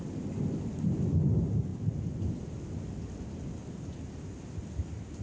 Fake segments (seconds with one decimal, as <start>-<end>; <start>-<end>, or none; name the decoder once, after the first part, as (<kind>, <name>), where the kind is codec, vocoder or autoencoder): none

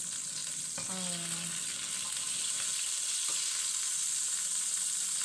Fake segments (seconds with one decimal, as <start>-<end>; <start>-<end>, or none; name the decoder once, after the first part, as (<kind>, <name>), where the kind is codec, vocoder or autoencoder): none

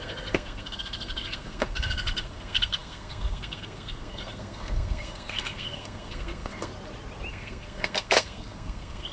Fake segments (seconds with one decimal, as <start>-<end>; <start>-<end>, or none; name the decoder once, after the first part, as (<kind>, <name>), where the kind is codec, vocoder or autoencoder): 0.0-6.7 (codec, SNAC); 7.3-9.1

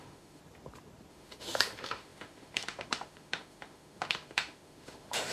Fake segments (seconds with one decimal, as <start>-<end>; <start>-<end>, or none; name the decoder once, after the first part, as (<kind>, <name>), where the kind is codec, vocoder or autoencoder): 0.0-0.4 (autoencoder, DAC-VAE); 1.1-5.3

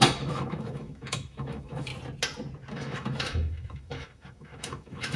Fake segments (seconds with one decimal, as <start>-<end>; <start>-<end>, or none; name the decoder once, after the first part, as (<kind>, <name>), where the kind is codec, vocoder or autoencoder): 0.0-1.9 (autoencoder, DAC-VAE); 2.7-5.2